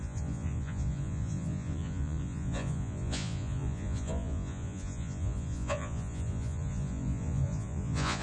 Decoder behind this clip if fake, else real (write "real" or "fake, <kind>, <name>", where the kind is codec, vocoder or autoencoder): fake, vocoder, Vocos